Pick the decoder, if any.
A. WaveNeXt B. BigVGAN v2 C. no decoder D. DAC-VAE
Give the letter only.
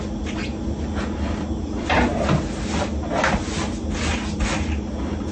C